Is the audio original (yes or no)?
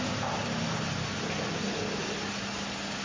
yes